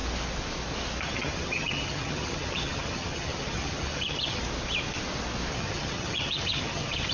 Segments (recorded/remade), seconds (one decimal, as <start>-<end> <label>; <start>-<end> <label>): 0.0-1.0 recorded; 1.0-4.4 remade; 4.4-5.5 recorded; 5.5-7.1 remade